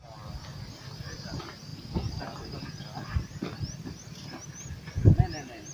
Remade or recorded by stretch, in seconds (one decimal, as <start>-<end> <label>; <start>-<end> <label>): 0.0-5.7 recorded